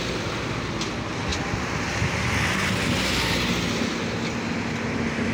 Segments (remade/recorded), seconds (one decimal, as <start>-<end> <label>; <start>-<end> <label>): 0.0-5.3 recorded